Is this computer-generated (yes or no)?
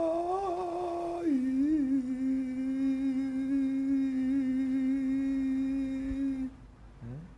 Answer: no